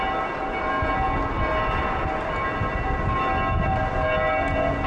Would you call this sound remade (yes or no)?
no